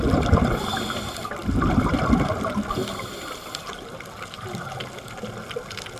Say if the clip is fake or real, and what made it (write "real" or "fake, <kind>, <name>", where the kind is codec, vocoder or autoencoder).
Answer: real